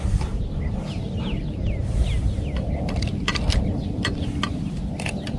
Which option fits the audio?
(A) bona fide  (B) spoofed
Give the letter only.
A